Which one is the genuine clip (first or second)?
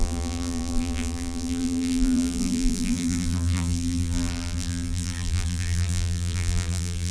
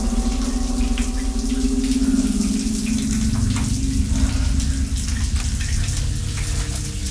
second